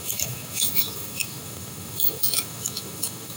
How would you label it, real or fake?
fake